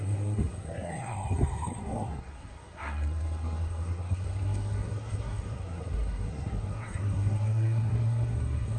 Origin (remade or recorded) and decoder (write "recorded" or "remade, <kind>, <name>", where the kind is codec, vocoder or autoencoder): remade, codec, SNAC